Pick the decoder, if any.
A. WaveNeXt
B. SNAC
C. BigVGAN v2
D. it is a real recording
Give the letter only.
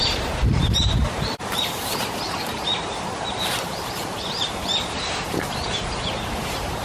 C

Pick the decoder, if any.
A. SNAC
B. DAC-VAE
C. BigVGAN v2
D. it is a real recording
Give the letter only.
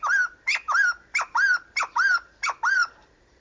C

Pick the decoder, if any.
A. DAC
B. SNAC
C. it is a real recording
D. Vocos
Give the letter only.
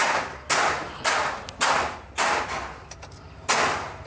C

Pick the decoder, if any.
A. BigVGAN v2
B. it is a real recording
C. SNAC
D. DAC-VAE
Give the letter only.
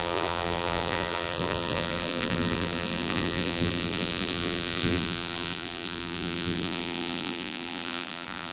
A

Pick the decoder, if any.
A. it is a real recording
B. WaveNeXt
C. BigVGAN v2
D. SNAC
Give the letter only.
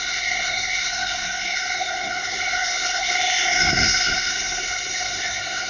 D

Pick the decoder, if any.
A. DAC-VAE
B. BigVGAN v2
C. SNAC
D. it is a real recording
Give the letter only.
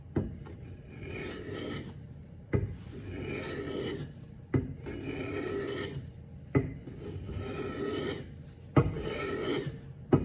D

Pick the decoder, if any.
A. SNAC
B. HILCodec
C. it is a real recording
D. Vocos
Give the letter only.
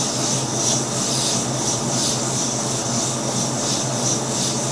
C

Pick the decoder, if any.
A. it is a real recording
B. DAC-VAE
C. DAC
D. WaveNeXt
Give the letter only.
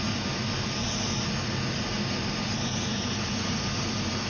A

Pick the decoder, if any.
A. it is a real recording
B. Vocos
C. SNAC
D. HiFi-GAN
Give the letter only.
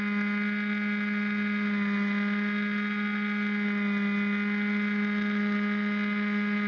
A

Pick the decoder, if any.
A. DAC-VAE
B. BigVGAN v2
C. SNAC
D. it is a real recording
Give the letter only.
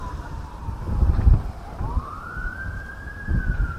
B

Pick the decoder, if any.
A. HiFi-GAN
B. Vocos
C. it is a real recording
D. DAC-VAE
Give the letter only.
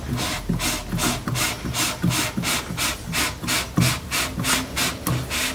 C